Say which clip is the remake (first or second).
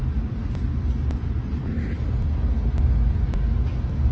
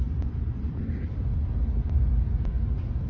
second